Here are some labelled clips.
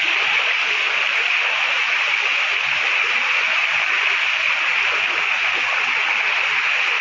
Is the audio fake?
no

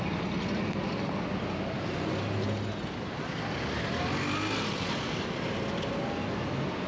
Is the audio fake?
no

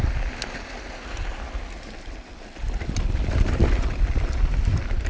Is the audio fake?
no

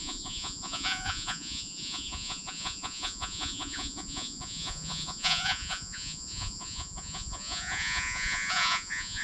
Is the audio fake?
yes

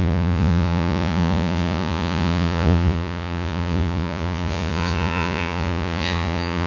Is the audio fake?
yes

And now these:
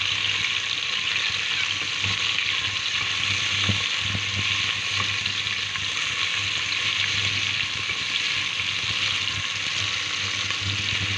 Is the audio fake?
no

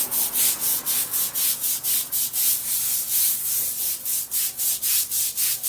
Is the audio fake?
yes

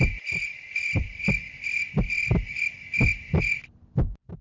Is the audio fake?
no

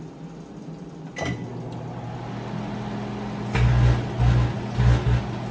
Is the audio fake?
no